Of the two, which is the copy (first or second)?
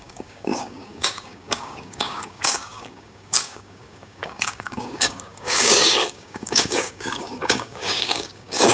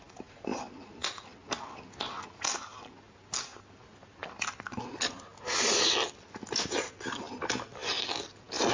first